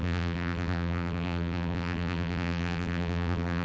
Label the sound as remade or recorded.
remade